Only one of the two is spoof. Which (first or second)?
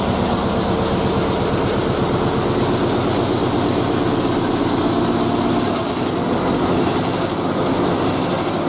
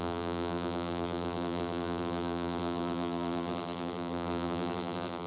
second